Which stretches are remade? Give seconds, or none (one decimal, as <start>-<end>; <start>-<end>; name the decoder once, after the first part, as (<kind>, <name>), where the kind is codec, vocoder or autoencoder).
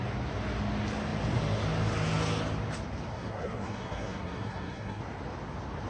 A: 3.1-5.0 (codec, SNAC)